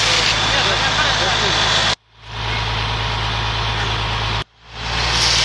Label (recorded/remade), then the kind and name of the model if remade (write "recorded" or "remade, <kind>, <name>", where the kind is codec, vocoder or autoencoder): recorded